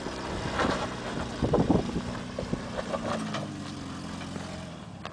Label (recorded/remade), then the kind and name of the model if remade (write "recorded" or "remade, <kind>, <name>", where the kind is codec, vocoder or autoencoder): recorded